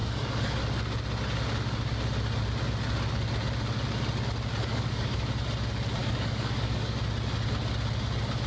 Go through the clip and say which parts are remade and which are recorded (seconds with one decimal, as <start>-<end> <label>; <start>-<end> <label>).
0.0-0.6 remade; 0.6-4.6 recorded; 4.6-5.3 remade; 5.3-6.0 recorded; 6.0-7.0 remade; 7.0-8.5 recorded